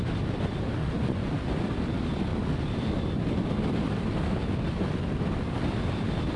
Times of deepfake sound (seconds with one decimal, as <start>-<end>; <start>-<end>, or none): 0.8-1.3